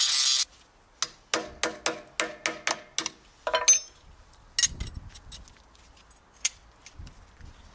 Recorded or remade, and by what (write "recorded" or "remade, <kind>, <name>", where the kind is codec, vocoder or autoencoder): recorded